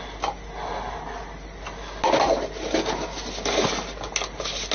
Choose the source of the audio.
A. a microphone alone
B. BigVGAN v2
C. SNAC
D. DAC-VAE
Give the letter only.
A